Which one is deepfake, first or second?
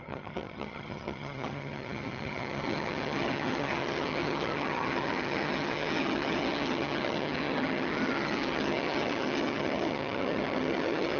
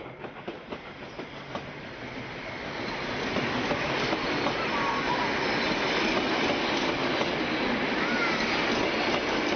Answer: first